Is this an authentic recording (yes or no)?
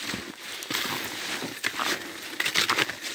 yes